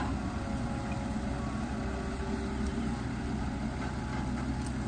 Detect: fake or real real